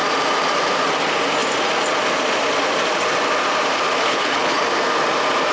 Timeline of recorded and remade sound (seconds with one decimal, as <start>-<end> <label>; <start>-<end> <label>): 0.0-4.0 recorded; 4.0-4.6 remade; 4.6-5.5 recorded